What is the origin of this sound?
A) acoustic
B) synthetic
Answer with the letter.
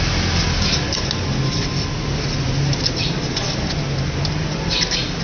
A